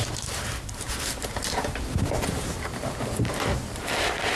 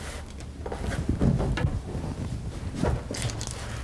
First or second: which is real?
second